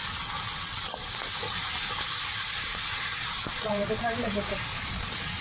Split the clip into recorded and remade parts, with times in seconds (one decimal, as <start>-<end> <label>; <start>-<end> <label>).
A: 0.0-2.7 recorded; 2.7-3.9 remade; 3.9-4.7 recorded; 4.7-5.4 remade